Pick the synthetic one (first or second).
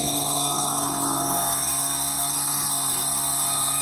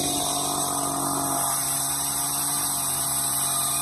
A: first